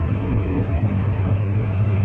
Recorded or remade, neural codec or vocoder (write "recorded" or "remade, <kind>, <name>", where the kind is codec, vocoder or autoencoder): remade, codec, SNAC